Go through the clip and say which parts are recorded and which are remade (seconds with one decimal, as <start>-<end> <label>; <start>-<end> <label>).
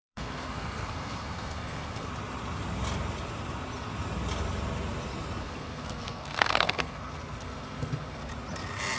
0.0-2.1 remade; 2.1-5.4 recorded; 5.4-8.3 remade; 8.3-9.0 recorded